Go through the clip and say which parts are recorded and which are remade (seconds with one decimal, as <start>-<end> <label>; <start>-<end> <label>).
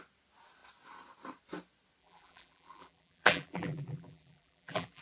0.0-2.0 recorded; 2.0-5.0 remade